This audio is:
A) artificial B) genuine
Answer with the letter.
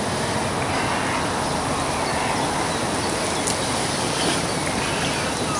B